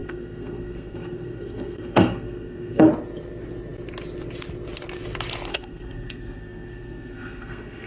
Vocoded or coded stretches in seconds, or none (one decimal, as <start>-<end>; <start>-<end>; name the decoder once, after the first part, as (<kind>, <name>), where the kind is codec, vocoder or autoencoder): 0.0-2.9 (codec, SNAC); 5.5-7.9